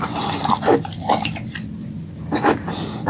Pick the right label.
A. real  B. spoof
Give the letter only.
A